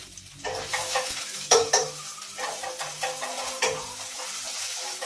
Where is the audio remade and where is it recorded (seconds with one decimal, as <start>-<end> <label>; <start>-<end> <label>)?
0.0-0.7 recorded; 0.7-2.1 remade; 2.1-4.6 recorded; 4.6-5.1 remade

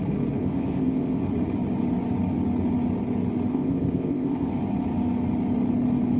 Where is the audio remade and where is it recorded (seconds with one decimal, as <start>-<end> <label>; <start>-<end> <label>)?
0.0-0.4 recorded; 0.4-1.2 remade; 1.2-3.5 recorded; 3.5-4.5 remade; 4.5-6.2 recorded

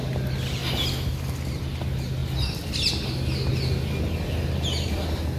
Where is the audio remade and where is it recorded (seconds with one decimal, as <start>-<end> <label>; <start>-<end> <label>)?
0.0-5.4 recorded

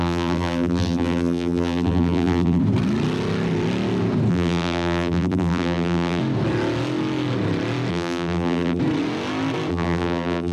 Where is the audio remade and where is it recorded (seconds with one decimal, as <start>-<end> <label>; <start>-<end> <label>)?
0.0-2.6 remade; 2.6-4.3 recorded; 4.3-6.2 remade; 6.2-7.9 recorded; 7.9-8.8 remade; 8.8-9.7 recorded; 9.7-10.5 remade

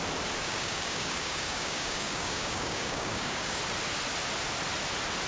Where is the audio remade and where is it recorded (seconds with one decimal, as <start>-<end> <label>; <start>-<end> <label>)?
0.0-0.4 recorded; 0.4-3.6 remade; 3.6-5.3 recorded

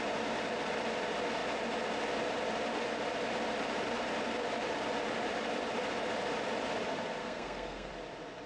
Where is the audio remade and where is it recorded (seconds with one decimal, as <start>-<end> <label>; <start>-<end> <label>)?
0.0-7.2 recorded; 7.2-7.9 remade; 7.9-8.5 recorded

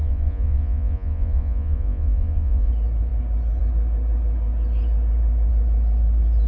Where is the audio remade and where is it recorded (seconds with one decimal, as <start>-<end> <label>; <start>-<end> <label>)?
0.0-2.7 remade; 2.7-6.5 recorded

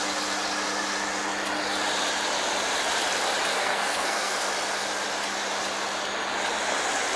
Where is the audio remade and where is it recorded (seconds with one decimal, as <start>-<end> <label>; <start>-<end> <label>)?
0.0-3.5 recorded; 3.5-4.5 remade; 4.5-7.2 recorded